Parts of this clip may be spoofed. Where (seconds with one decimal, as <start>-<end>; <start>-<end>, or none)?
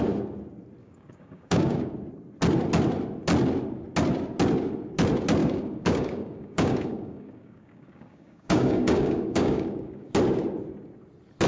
0.8-1.9; 5.4-10.1